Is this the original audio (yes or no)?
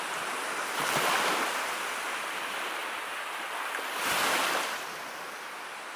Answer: yes